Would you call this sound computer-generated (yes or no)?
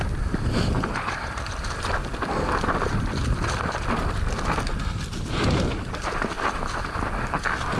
no